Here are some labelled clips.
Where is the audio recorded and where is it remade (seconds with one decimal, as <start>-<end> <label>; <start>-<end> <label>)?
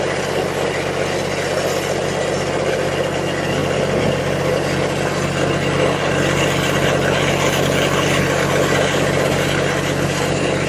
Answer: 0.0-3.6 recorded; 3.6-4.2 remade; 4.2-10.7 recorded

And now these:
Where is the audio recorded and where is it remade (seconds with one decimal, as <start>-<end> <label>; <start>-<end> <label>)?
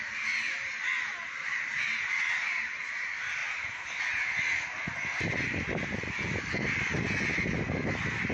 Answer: 0.0-1.5 recorded; 1.5-2.1 remade; 2.1-3.4 recorded; 3.4-4.0 remade; 4.0-8.3 recorded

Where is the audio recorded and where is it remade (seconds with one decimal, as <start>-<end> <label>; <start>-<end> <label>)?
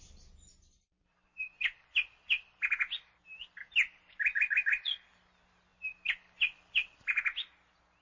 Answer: 0.0-0.5 recorded; 0.5-1.8 remade; 1.8-8.0 recorded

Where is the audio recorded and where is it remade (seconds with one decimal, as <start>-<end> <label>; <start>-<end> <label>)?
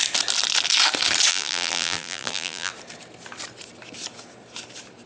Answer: 0.0-1.3 recorded; 1.3-2.7 remade; 2.7-5.1 recorded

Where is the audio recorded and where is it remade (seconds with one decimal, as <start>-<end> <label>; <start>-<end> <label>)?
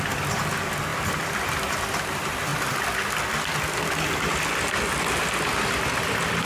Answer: 0.0-6.5 recorded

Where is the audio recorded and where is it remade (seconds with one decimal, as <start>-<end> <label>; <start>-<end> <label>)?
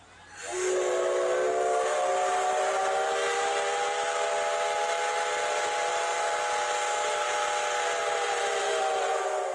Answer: 0.0-9.5 recorded